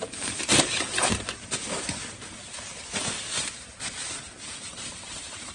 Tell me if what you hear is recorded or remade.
remade